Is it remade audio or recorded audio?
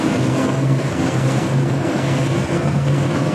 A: remade